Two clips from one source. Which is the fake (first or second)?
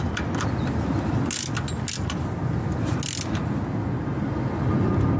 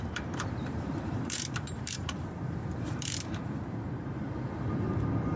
second